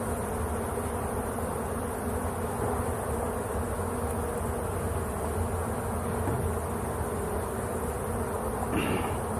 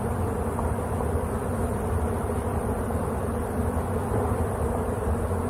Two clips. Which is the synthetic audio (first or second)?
second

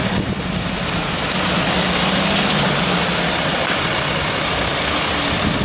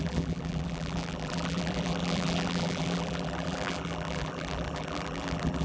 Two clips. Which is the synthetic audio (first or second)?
second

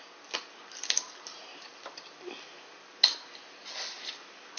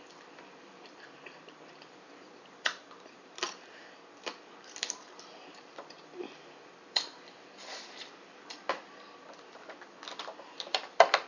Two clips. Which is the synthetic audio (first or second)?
second